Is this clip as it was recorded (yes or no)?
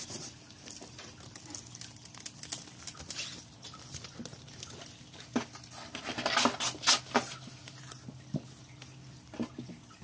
yes